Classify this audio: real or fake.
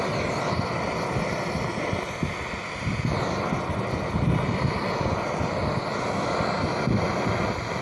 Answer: real